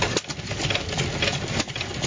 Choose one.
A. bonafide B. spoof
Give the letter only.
A